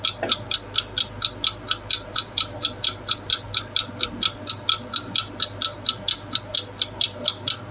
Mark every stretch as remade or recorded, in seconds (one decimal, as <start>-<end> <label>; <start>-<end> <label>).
0.0-2.1 recorded; 2.1-3.3 remade; 3.3-7.7 recorded